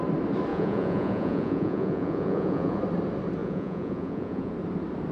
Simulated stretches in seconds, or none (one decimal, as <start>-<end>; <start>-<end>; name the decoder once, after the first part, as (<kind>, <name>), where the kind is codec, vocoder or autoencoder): 0.5-2.8 (vocoder, Vocos); 3.4-4.5